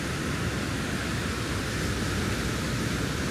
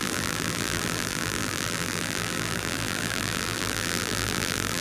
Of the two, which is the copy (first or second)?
second